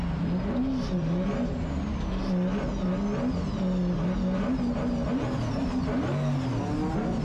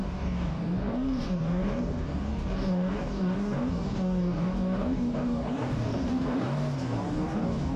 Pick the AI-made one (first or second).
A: second